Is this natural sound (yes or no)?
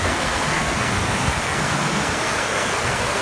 no